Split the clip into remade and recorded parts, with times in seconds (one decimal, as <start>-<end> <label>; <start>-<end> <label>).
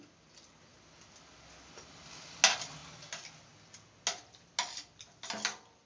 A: 0.0-5.9 recorded